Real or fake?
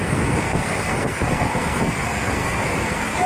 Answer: fake